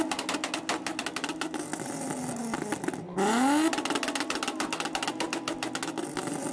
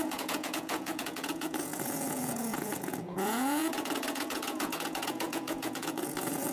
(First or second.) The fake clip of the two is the second